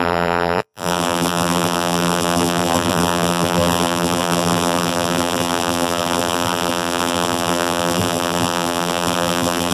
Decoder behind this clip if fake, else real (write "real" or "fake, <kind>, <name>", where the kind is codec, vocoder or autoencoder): fake, vocoder, BigVGAN v2